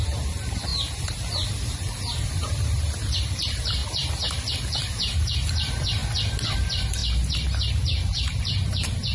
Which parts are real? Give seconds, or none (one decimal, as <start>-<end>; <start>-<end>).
3.8-4.5; 6.0-6.5; 7.0-7.7